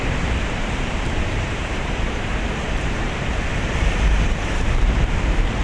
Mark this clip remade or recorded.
remade